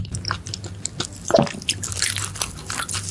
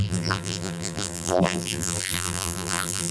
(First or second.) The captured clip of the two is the first